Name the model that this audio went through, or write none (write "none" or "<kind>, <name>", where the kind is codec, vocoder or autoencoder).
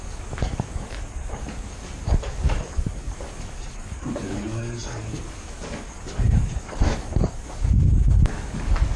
codec, DAC